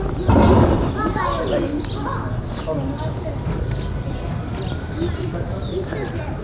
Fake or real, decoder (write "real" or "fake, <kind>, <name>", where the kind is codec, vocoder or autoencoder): real